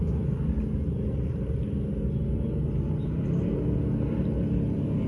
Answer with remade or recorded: recorded